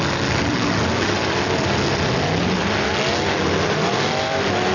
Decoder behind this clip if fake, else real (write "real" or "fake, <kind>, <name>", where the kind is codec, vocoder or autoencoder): real